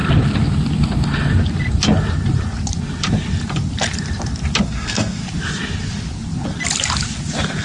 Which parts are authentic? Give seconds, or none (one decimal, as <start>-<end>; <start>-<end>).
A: 0.0-4.6; 5.2-7.6